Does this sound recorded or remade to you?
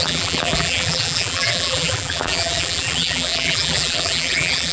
remade